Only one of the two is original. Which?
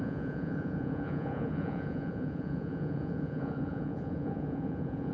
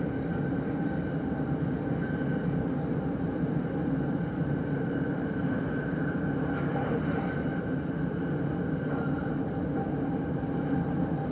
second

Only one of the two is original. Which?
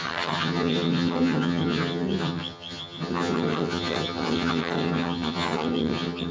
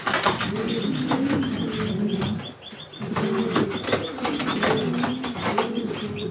second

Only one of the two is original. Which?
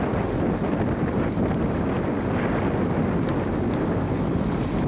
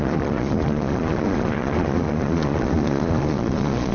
first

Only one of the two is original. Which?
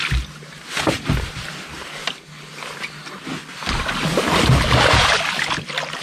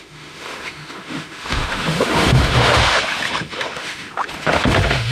first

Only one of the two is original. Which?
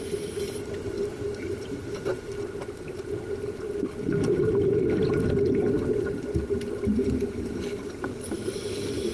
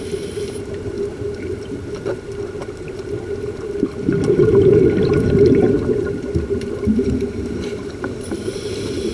first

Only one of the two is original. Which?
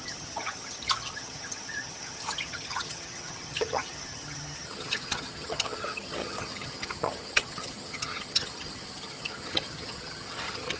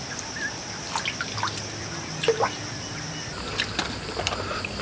second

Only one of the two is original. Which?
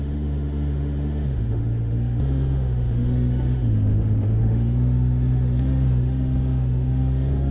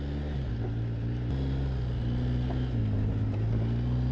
second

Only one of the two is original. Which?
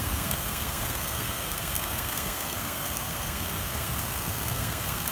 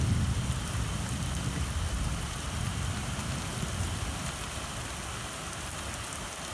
second